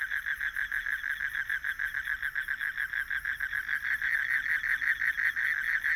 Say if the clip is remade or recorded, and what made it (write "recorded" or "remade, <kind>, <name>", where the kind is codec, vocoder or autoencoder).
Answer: recorded